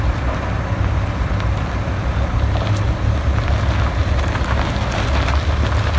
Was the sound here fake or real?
real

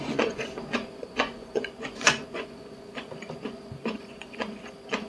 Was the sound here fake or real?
fake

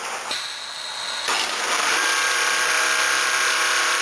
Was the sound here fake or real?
real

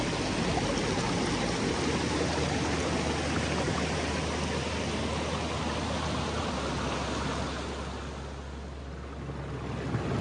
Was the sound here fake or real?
real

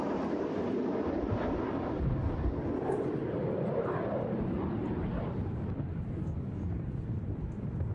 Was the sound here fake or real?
real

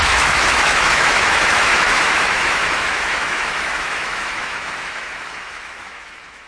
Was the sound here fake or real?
fake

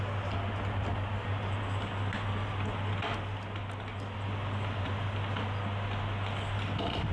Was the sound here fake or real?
real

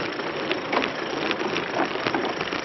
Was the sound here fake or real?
real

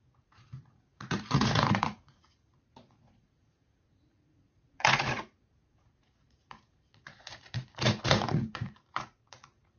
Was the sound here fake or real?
fake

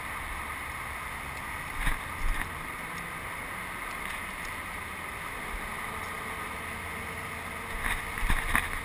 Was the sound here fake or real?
real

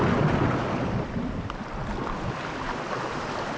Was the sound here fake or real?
real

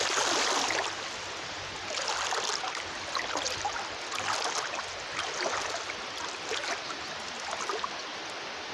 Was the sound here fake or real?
real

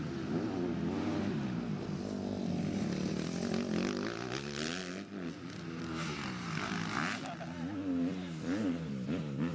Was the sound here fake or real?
real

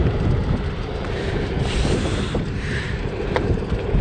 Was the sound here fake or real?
fake